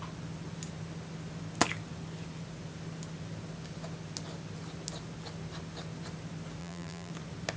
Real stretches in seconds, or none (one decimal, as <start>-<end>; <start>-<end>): 0.0-6.6; 7.1-7.6